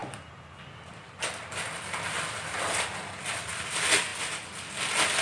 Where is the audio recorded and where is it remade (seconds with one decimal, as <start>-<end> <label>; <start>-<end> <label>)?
0.0-5.2 recorded